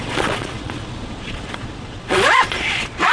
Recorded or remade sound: remade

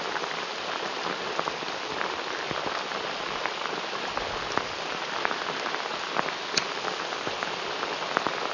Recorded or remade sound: recorded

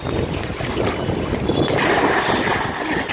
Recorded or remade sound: recorded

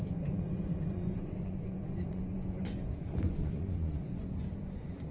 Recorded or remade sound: remade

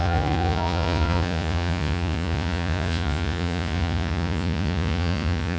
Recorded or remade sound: remade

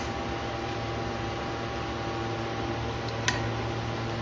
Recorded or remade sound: recorded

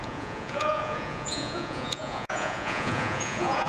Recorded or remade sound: remade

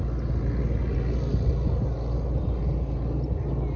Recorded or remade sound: recorded